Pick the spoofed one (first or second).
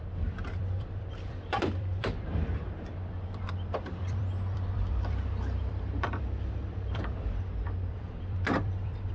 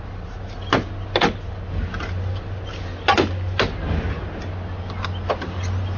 first